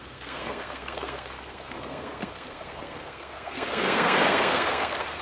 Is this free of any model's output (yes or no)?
no